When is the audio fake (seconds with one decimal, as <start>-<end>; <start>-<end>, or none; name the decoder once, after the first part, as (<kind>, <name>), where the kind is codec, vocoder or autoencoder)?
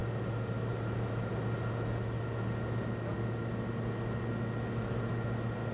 none